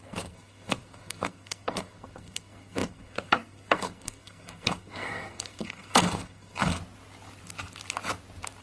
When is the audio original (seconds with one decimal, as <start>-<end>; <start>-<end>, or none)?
6.8-8.6